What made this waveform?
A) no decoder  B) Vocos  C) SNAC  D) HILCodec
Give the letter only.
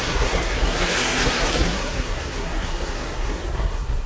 C